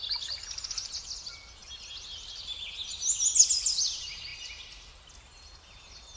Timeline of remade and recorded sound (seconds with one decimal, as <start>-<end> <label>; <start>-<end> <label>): 0.0-6.2 recorded